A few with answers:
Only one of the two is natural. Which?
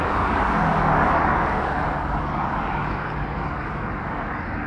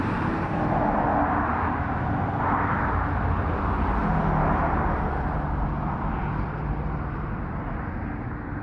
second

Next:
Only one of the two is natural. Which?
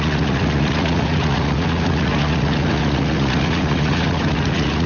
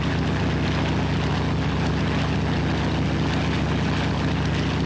second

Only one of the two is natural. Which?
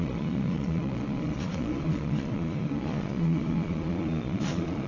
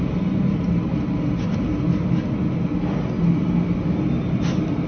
second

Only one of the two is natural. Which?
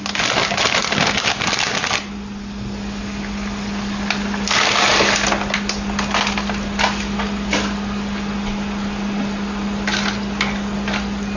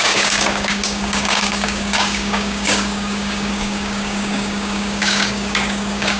first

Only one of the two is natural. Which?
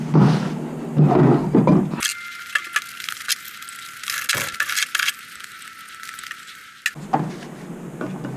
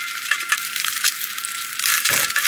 first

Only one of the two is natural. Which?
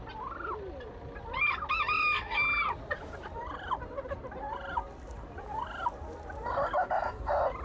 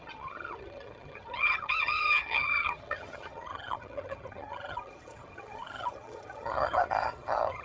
first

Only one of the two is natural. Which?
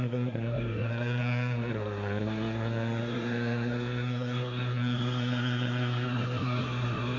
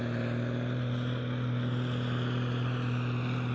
second